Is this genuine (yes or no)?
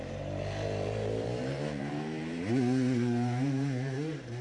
no